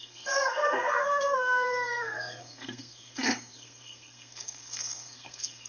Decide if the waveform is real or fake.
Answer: fake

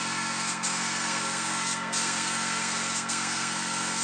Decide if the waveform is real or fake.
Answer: fake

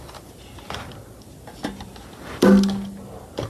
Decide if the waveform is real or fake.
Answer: real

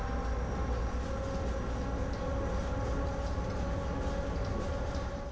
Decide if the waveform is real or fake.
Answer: real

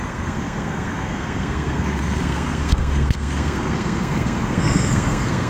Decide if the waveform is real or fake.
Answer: fake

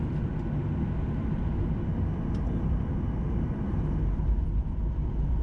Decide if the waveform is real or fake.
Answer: real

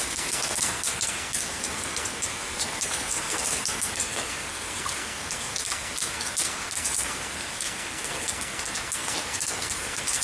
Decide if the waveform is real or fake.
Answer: fake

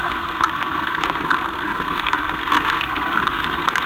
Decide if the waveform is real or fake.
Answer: fake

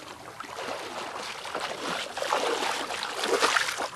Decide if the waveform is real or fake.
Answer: real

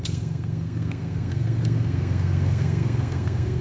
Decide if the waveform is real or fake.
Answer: fake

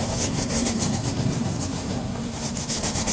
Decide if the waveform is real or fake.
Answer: fake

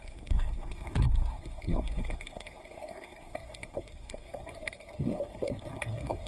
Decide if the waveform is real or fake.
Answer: fake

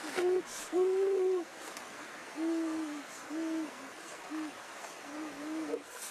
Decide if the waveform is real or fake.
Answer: fake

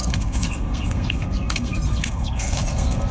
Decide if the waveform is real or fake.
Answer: fake